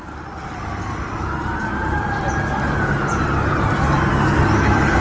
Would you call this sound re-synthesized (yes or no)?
no